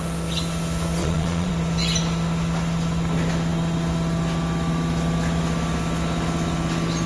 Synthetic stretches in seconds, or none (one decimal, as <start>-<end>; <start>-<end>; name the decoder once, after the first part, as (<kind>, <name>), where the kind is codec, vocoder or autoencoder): 1.0-1.5 (vocoder, Vocos)